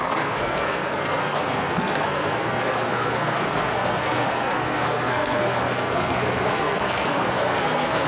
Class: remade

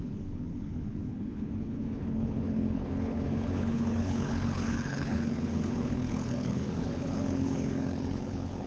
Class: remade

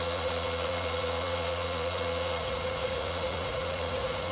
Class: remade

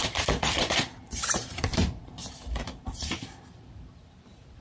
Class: remade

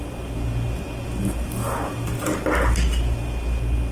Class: recorded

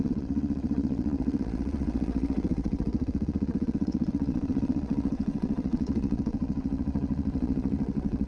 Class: remade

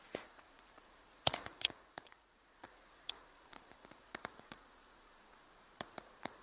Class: remade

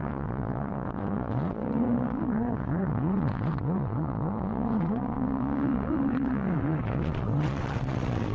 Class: remade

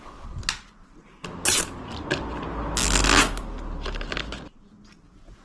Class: recorded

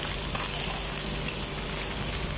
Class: recorded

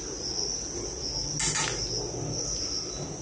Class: recorded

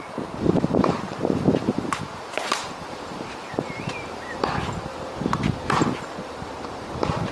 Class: remade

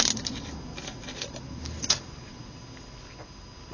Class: recorded